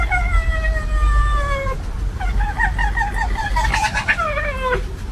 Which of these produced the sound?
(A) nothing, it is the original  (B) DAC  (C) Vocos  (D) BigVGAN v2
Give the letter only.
A